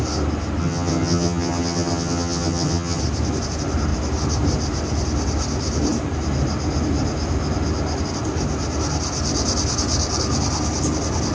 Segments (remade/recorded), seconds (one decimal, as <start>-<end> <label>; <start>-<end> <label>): 0.0-0.6 recorded; 0.6-3.0 remade; 3.0-11.3 recorded

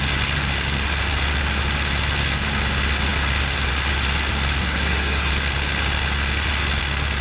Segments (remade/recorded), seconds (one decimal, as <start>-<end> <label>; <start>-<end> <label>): 0.0-4.6 recorded; 4.6-5.3 remade; 5.3-7.2 recorded

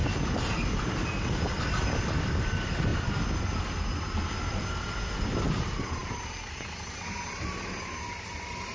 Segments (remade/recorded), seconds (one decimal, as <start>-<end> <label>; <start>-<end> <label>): 0.0-8.7 recorded